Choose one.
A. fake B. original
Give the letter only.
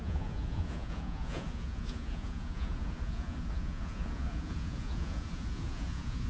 A